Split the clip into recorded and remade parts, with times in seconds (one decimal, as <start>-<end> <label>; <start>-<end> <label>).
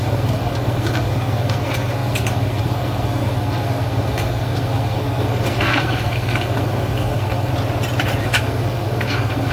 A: 0.0-7.5 remade; 7.5-8.2 recorded; 8.2-9.5 remade